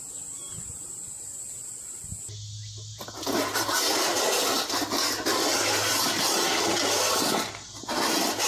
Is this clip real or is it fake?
real